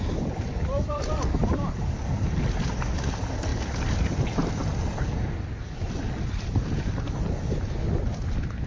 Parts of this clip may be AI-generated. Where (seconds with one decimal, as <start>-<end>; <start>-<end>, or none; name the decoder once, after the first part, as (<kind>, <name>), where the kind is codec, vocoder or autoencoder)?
none